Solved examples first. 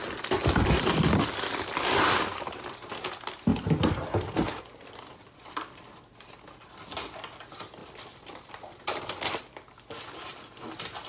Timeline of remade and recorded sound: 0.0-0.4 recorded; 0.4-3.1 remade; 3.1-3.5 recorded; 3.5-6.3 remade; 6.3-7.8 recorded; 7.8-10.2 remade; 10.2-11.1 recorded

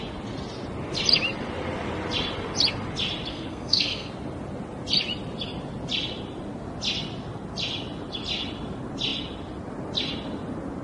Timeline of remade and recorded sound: 0.0-3.3 recorded; 3.3-4.1 remade; 4.1-10.8 recorded

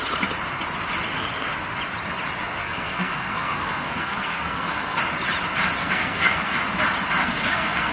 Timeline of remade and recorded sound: 0.0-2.6 recorded; 2.6-5.0 remade; 5.0-5.8 recorded; 5.8-6.6 remade; 6.6-7.2 recorded; 7.2-7.9 remade

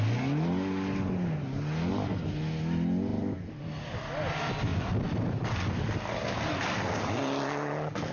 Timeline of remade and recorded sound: 0.0-8.1 recorded

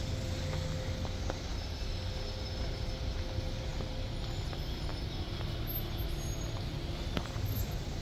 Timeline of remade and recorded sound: 0.0-8.0 recorded

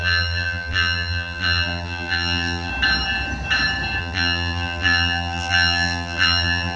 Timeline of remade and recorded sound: 0.0-2.7 remade; 2.7-4.0 recorded; 4.0-6.8 remade